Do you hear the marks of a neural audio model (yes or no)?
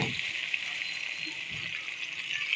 no